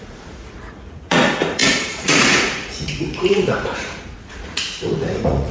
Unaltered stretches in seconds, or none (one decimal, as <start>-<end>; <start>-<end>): none